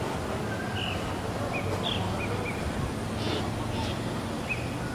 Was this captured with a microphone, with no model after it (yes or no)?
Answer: yes